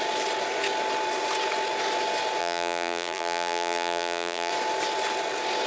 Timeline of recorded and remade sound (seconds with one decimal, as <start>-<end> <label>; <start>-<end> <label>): 0.0-2.4 recorded; 2.4-4.5 remade; 4.5-5.7 recorded